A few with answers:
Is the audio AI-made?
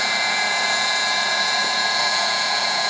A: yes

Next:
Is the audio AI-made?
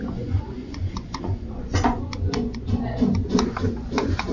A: yes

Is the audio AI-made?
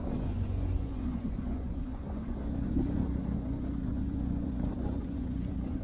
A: yes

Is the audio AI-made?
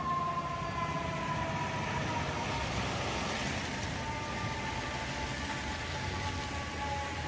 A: no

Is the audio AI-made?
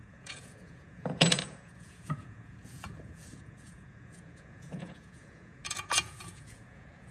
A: yes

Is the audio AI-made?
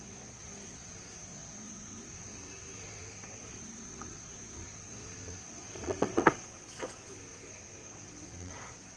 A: yes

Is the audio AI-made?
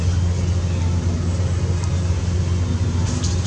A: no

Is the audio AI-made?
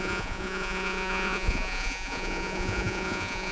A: yes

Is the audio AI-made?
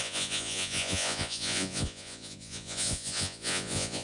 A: yes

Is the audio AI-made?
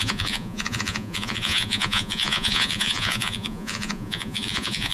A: yes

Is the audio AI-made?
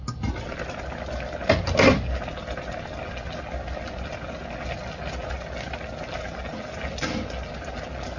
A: no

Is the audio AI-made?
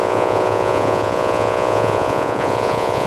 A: yes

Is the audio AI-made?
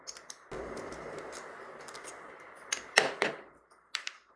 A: no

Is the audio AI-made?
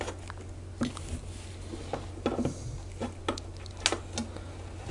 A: no